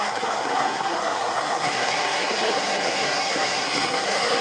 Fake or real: fake